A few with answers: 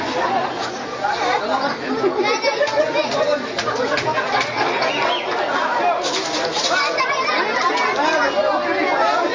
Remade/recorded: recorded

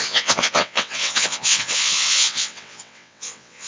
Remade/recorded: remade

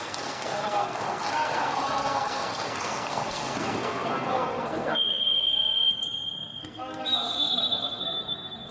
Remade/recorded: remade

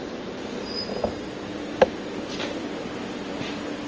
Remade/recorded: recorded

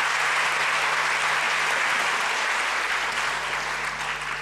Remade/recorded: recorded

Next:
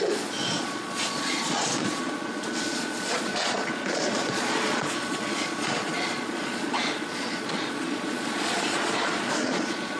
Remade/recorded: remade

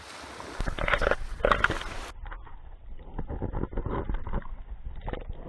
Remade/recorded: recorded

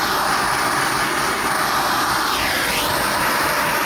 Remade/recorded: recorded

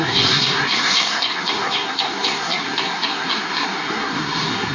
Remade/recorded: remade